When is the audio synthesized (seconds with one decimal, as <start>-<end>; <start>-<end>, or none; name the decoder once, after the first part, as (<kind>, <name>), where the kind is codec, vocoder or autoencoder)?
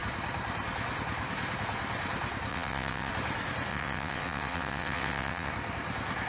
2.5-3.1 (vocoder, WaveNeXt); 3.7-5.5